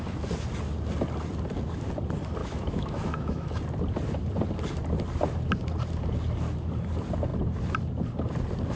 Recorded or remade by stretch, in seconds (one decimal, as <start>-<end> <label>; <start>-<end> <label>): 0.0-2.4 recorded; 2.4-3.6 remade; 3.6-8.8 recorded